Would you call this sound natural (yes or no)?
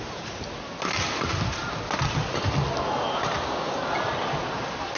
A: yes